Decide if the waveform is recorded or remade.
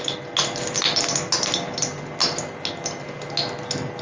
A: recorded